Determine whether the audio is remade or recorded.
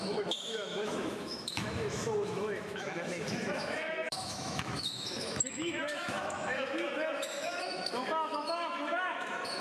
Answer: remade